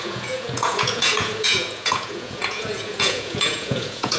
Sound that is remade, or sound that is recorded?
remade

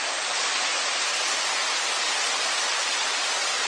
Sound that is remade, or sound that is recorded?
recorded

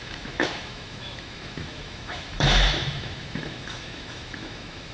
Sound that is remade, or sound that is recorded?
remade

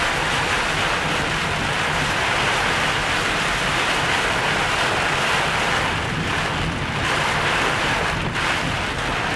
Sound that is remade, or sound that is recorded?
recorded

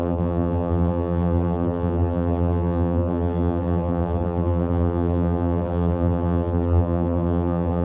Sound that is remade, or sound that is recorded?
remade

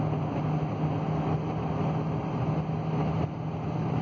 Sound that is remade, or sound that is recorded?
recorded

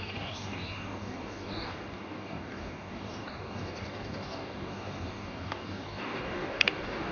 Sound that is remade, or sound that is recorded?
remade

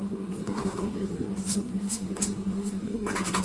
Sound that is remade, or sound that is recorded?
remade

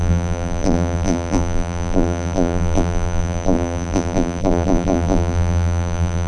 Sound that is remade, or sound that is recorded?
remade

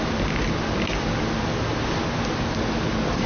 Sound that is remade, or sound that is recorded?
recorded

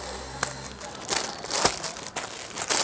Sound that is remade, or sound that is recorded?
recorded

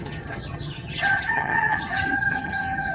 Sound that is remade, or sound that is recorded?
remade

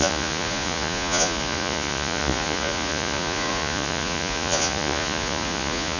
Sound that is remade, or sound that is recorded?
remade